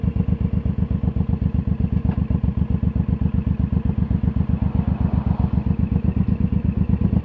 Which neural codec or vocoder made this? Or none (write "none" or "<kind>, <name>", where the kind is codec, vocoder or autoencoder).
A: none